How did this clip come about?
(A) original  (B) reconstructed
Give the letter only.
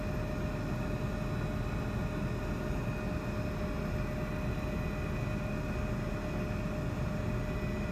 A